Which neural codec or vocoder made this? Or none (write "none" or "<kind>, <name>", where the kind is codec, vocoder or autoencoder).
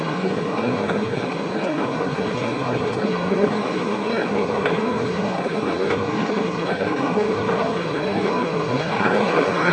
codec, SNAC